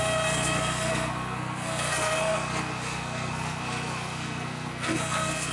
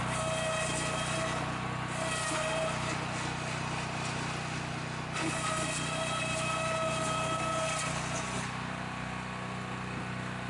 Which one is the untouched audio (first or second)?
second